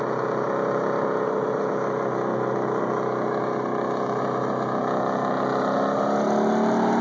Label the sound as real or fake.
real